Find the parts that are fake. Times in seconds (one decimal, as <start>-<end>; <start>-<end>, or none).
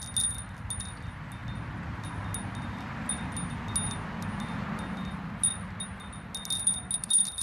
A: none